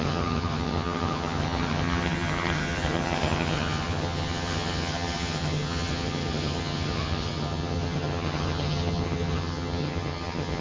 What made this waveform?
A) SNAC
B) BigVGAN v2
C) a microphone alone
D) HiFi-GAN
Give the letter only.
D